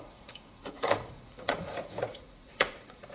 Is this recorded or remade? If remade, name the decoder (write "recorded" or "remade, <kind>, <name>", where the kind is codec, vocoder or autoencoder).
remade, vocoder, Vocos